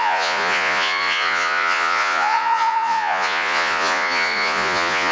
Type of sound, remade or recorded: remade